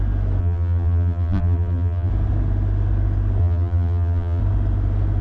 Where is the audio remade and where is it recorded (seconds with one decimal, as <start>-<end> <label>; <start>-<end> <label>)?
0.0-0.4 recorded; 0.4-2.1 remade; 2.1-3.4 recorded; 3.4-4.4 remade; 4.4-5.2 recorded